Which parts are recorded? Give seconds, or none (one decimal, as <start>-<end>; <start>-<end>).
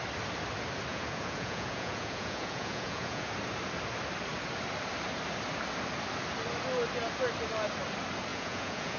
0.0-0.9; 3.3-8.3